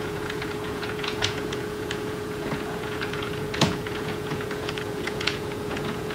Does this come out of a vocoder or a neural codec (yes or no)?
yes